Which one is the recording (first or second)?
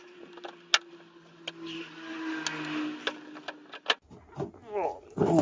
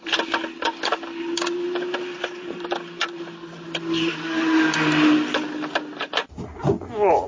first